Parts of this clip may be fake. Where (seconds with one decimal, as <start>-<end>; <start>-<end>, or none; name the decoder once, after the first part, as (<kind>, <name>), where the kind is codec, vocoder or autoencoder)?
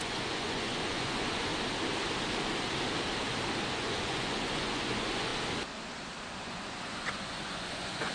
0.0-1.5 (vocoder, Vocos); 3.7-5.3; 6.4-8.1